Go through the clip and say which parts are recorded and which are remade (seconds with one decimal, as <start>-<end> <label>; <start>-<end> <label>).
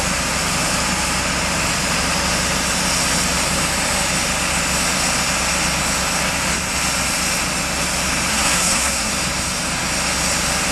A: 0.0-8.3 recorded; 8.3-9.1 remade; 9.1-10.7 recorded